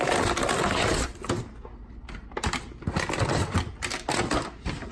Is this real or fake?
real